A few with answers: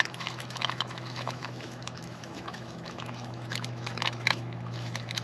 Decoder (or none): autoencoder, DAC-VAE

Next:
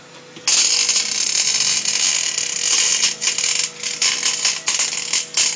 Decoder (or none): none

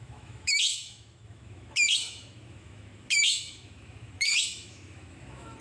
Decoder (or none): autoencoder, DAC-VAE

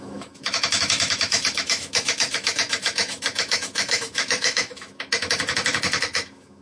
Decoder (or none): autoencoder, DAC-VAE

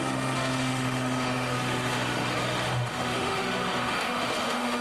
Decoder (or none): autoencoder, DAC-VAE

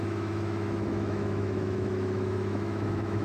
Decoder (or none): autoencoder, DAC-VAE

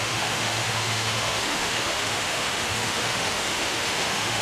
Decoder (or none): autoencoder, DAC-VAE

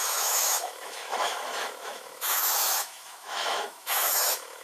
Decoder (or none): autoencoder, DAC-VAE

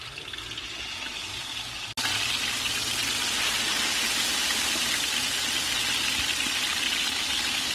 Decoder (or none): none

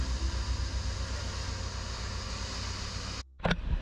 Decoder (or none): none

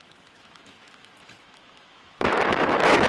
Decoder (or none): autoencoder, DAC-VAE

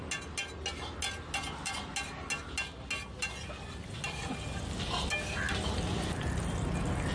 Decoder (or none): none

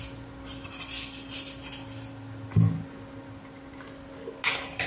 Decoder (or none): none